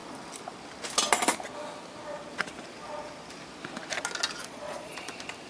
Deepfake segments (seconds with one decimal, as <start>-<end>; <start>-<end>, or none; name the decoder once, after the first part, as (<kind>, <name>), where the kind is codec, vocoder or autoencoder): 4.4-5.1 (vocoder, Vocos)